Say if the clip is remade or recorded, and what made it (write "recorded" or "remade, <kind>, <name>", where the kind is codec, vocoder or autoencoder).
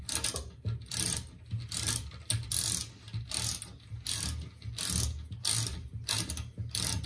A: recorded